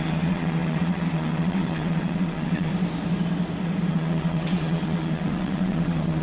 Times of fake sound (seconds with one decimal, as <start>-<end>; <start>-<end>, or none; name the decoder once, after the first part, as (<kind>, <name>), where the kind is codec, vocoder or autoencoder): 0.0-2.7 (vocoder, WaveNeXt); 3.9-6.2